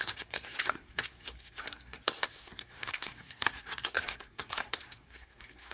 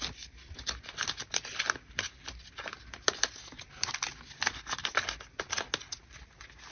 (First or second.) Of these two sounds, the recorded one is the second